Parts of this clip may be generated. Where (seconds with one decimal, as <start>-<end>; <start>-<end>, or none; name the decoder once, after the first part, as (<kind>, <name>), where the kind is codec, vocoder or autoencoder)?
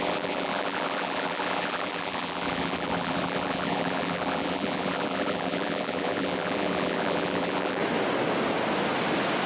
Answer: 0.0-7.8 (vocoder, BigVGAN v2)